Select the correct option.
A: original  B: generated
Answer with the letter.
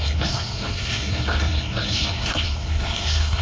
B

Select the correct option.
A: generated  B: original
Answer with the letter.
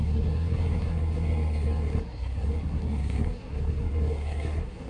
A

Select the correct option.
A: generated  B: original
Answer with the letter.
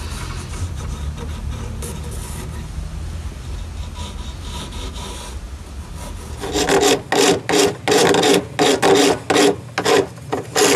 B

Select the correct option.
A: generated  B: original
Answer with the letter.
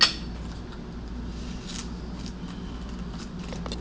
B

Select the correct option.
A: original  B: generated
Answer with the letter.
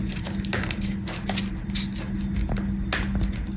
A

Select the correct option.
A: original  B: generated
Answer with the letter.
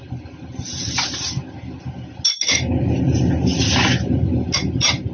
A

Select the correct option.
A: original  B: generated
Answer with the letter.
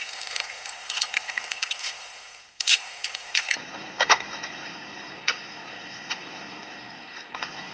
B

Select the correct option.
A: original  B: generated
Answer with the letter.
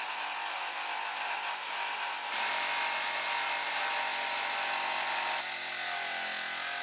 A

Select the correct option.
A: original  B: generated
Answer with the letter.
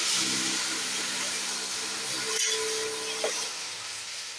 A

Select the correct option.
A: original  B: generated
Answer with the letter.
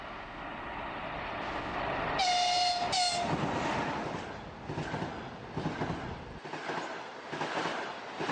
A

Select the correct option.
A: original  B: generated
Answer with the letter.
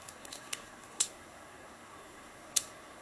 B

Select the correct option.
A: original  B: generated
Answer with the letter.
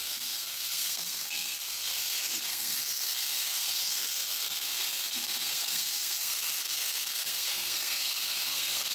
B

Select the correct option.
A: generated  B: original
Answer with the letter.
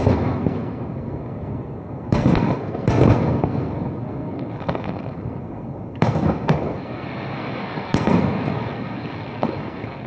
A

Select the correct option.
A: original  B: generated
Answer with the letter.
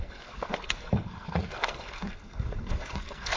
B